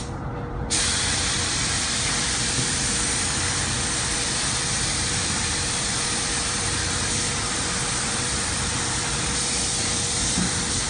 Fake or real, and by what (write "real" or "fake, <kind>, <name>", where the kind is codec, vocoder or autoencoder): fake, vocoder, BigVGAN v2